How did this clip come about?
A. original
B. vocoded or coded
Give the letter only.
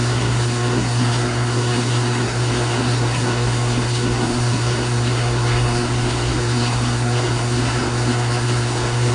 B